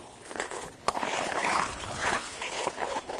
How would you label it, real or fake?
fake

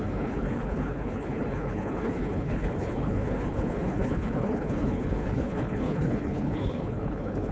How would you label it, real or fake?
fake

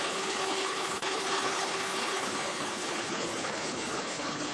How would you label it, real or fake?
fake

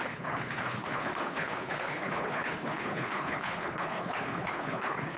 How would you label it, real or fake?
fake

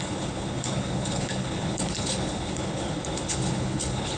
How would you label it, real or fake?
fake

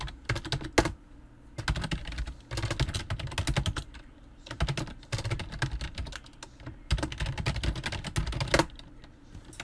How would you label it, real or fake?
real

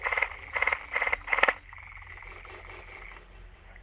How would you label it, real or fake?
real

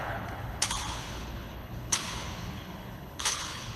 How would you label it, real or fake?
fake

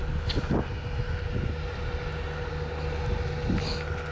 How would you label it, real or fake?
real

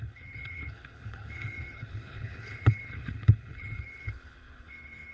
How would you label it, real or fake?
fake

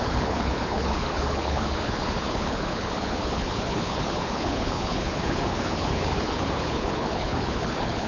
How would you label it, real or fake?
fake